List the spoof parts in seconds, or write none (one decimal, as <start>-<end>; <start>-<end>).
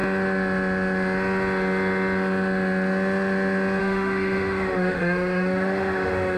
3.8-6.4